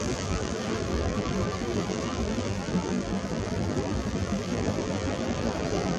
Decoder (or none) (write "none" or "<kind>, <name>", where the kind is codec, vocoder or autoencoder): vocoder, BigVGAN v2